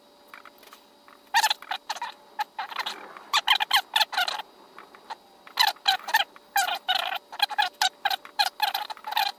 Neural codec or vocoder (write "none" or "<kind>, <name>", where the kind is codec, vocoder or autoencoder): none